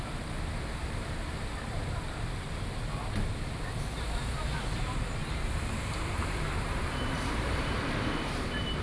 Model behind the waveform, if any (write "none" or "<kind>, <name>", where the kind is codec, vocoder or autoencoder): vocoder, BigVGAN v2